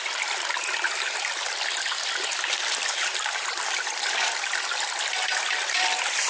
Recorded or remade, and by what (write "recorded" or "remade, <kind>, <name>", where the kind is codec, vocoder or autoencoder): recorded